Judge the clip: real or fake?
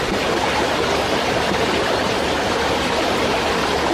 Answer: real